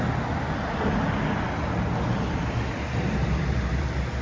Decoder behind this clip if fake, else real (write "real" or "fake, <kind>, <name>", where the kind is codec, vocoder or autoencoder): real